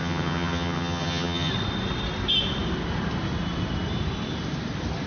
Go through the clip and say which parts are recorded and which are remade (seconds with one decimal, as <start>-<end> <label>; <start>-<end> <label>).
0.0-1.5 remade; 1.5-5.1 recorded